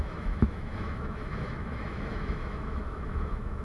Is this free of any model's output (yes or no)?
no